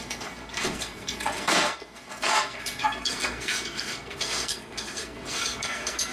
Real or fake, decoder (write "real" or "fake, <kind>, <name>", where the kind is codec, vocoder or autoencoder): fake, codec, SNAC